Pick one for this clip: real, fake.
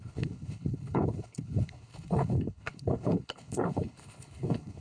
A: fake